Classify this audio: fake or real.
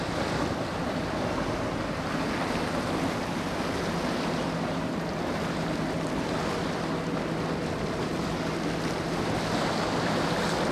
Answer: real